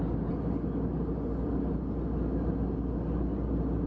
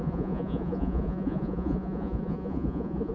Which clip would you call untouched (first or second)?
first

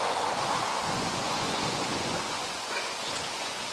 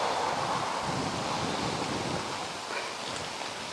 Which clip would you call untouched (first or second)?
second